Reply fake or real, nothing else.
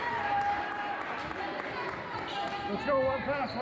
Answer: real